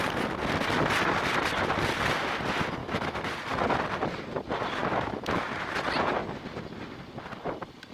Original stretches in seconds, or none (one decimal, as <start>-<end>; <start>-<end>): 0.0-2.8; 3.3-4.8; 5.5-7.9